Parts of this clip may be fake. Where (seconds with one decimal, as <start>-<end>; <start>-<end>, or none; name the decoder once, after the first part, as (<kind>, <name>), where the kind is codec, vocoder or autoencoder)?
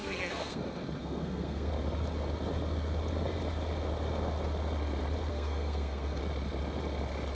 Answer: 0.0-0.6 (codec, SNAC); 1.0-1.7; 5.3-6.2